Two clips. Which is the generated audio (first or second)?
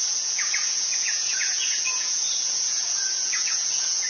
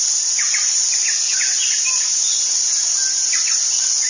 first